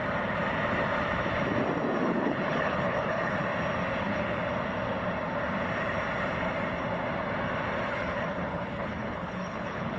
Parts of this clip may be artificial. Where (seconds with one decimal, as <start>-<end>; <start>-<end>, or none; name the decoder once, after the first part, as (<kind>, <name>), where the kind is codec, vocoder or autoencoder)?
2.0-3.4 (codec, HILCodec); 4.0-4.4; 7.9-10.0